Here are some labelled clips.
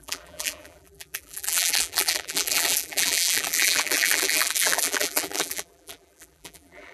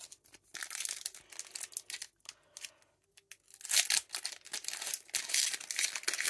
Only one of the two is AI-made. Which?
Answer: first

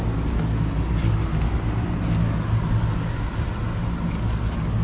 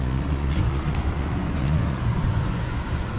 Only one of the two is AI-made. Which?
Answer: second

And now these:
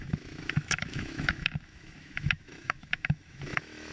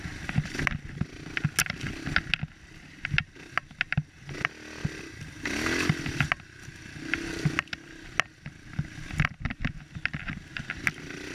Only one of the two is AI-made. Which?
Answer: first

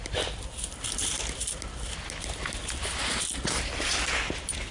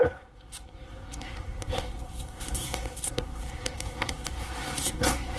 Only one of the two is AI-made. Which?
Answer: second